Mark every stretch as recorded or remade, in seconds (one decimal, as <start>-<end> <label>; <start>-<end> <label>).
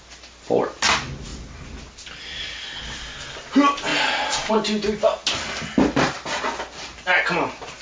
0.0-3.9 recorded; 3.9-4.5 remade; 4.5-7.8 recorded